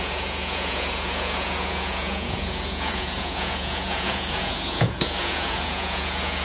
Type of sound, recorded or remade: remade